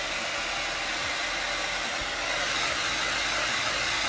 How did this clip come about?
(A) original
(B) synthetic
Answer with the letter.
A